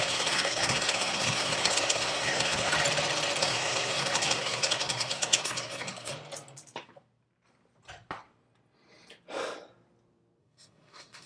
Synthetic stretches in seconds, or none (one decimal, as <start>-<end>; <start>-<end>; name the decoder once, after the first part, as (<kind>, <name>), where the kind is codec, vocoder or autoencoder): 0.0-2.7 (codec, SNAC); 3.4-6.1; 10.4-11.3